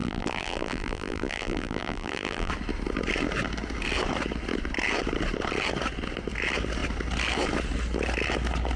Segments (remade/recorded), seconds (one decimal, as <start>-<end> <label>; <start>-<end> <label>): 0.0-2.5 remade; 2.5-8.8 recorded

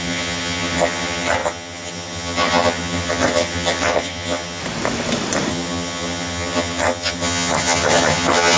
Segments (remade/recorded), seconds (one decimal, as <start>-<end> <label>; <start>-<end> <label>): 0.0-4.6 remade; 4.6-5.5 recorded; 5.5-8.6 remade

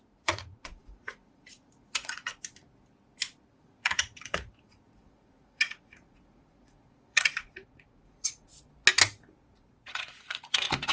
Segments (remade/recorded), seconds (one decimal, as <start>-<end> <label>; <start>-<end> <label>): 0.0-2.3 remade; 2.3-3.5 recorded; 3.5-8.5 remade; 8.5-9.6 recorded; 9.6-10.9 remade

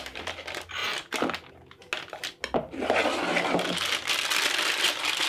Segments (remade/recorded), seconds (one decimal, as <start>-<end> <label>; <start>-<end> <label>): 0.0-5.3 recorded

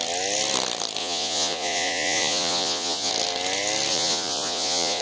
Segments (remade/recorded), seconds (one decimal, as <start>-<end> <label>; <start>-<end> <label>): 0.0-1.0 recorded; 1.0-3.1 remade; 3.1-3.9 recorded; 3.9-5.0 remade